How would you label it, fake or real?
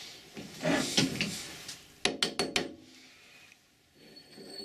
real